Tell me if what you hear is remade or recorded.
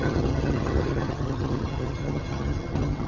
remade